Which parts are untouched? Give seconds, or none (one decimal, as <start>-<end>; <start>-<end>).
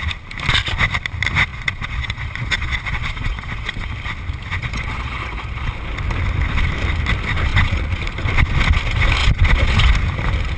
0.0-1.5; 3.9-4.6; 5.7-7.5; 8.0-9.2; 9.8-10.6